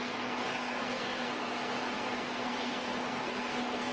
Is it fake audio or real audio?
fake